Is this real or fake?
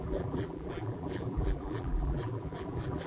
fake